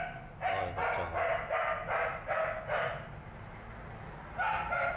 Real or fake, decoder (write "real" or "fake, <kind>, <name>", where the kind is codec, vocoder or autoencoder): real